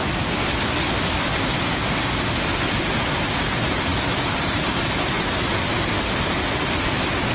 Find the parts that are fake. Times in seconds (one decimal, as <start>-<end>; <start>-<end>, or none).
none

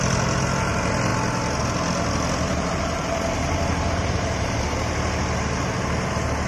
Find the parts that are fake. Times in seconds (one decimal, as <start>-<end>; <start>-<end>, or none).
2.5-4.6

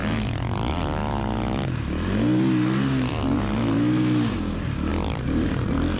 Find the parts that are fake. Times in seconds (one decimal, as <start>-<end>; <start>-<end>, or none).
4.9-6.0

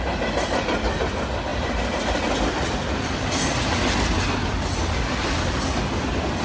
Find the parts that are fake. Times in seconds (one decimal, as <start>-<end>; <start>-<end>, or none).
none

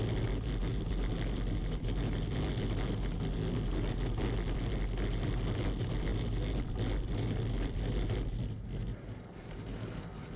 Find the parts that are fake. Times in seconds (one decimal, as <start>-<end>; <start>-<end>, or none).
none

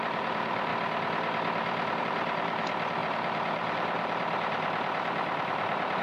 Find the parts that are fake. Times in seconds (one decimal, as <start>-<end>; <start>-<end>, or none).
0.0-0.7; 2.0-6.0

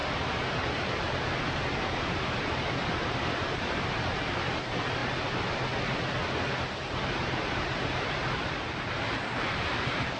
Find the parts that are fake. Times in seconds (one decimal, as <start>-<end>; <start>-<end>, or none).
1.8-5.0; 6.3-10.2

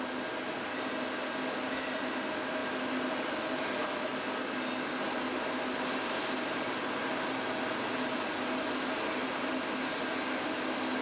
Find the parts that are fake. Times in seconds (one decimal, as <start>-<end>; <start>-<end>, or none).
none